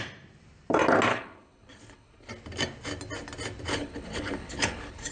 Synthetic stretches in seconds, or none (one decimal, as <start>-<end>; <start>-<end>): 1.1-2.3; 3.7-5.1